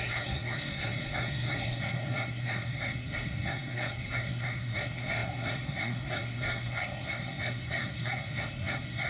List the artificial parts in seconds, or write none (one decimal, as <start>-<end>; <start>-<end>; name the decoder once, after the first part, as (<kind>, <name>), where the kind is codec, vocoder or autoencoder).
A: 0.0-9.1 (codec, SNAC)